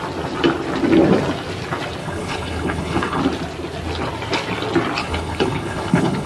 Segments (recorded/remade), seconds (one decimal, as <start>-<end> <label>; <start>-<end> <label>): 0.0-2.0 recorded; 2.0-3.2 remade; 3.2-5.0 recorded; 5.0-6.3 remade